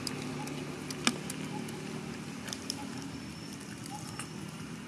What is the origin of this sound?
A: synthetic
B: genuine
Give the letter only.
B